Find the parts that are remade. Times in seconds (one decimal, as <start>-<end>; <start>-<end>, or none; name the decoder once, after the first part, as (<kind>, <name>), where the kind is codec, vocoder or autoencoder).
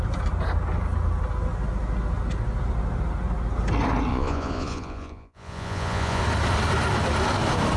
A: 4.1-6.2 (vocoder, Vocos)